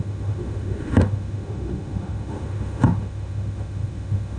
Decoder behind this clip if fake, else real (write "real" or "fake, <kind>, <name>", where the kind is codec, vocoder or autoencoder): fake, autoencoder, DAC-VAE